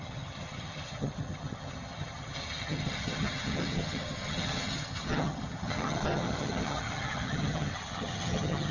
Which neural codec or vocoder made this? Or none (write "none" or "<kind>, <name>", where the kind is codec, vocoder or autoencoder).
vocoder, HiFi-GAN